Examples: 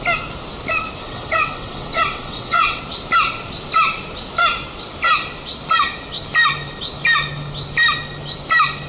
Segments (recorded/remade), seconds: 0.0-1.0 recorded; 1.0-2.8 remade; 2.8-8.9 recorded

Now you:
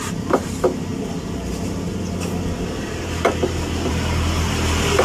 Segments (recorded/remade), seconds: 0.0-5.0 recorded